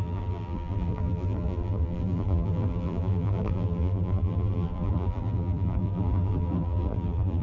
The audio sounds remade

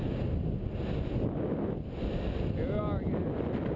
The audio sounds recorded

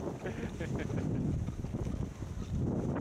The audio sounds recorded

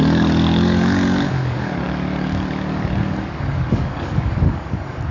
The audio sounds remade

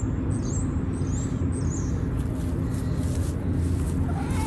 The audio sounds recorded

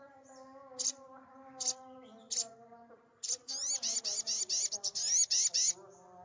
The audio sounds recorded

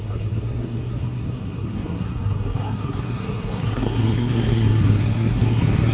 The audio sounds remade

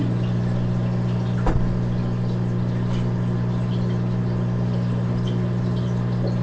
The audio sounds recorded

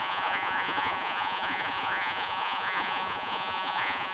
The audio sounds remade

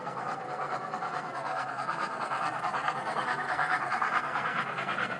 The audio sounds remade